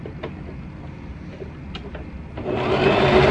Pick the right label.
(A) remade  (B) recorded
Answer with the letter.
B